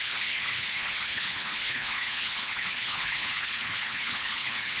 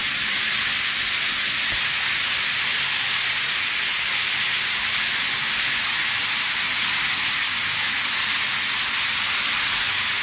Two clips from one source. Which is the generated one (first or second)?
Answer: first